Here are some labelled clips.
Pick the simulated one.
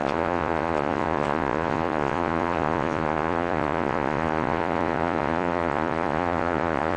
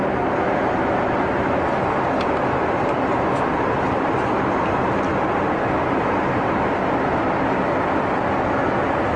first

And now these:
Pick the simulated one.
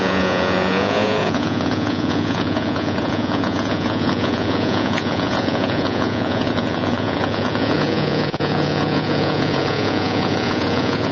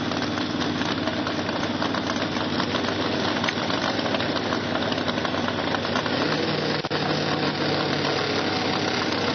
first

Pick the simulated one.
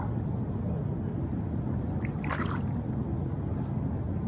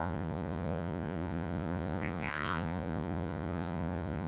second